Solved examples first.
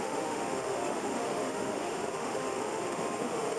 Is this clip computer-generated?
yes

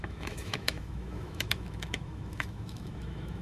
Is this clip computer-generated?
yes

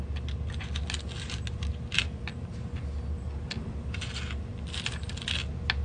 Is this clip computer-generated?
no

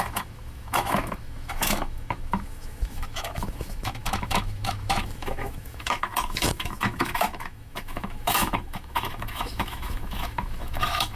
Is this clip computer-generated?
yes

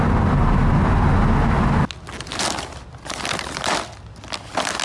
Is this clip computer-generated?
no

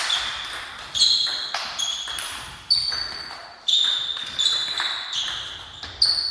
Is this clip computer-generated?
no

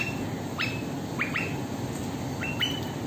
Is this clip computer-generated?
no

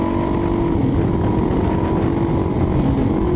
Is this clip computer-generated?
no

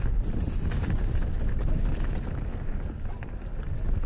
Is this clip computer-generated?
no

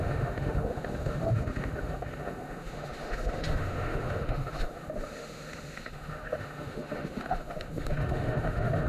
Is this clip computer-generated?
yes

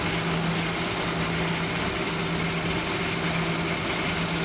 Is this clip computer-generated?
no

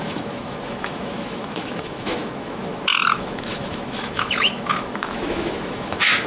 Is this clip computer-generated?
yes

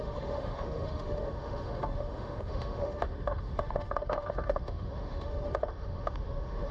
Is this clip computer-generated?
yes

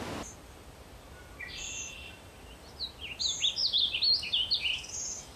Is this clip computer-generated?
no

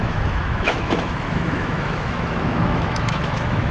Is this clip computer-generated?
yes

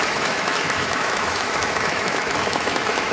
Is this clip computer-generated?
yes